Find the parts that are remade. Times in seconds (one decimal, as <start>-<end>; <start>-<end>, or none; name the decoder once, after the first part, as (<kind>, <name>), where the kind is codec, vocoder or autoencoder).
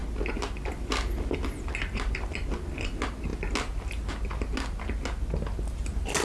none